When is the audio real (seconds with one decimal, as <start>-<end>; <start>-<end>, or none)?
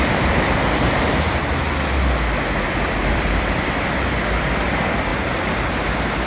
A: 1.6-3.0; 5.1-6.3